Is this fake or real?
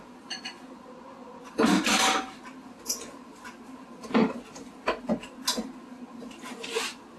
real